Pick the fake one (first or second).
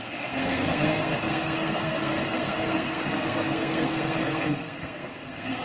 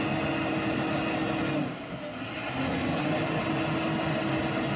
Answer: first